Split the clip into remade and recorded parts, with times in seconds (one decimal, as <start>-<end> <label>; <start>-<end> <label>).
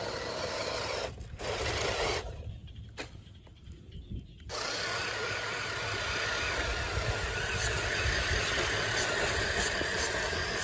0.0-10.6 recorded